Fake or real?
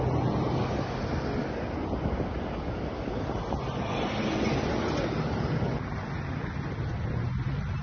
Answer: real